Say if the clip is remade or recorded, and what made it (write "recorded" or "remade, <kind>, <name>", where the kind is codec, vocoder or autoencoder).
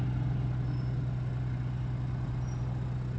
recorded